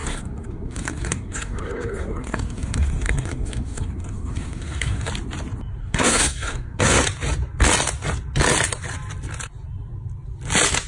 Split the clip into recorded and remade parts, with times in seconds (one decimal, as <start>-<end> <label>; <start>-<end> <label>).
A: 0.0-5.1 remade; 5.1-5.8 recorded; 5.8-7.0 remade; 7.0-10.9 recorded